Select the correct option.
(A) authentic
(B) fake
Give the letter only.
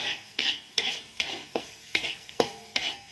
B